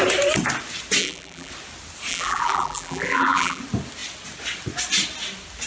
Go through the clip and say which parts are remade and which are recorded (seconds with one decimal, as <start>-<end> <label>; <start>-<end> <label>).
0.0-1.0 recorded; 1.0-1.5 remade; 1.5-2.1 recorded; 2.1-3.6 remade; 3.6-5.7 recorded